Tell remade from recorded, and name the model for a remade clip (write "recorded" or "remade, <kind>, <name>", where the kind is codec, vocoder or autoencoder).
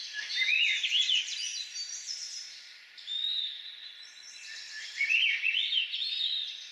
remade, vocoder, BigVGAN v2